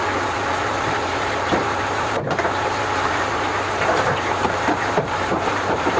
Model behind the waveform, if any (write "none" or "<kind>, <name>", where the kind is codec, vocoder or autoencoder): vocoder, BigVGAN v2